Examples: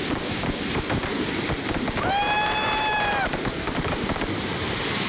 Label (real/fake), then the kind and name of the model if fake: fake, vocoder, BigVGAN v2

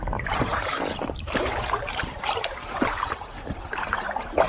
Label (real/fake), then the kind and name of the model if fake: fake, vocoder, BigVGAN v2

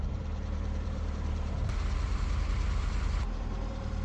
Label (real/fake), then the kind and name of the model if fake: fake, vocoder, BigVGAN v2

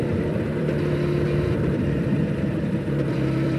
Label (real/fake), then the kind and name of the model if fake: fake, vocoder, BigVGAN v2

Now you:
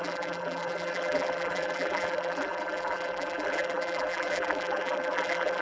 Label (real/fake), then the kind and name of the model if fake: fake, vocoder, BigVGAN v2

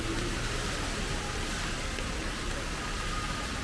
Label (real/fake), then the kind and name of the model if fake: real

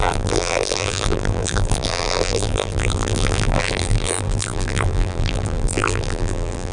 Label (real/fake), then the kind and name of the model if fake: fake, vocoder, BigVGAN v2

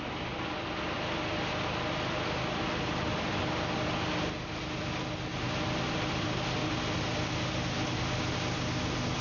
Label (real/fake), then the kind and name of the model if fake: real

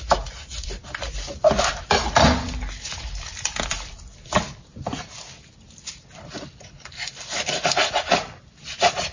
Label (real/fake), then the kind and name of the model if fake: fake, vocoder, BigVGAN v2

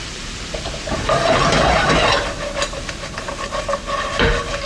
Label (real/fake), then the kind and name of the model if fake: fake, vocoder, BigVGAN v2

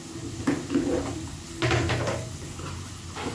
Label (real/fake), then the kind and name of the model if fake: real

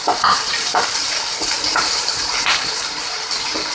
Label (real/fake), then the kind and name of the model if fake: fake, vocoder, BigVGAN v2